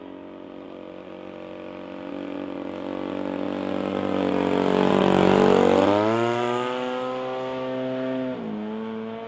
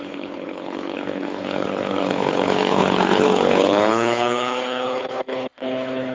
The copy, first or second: second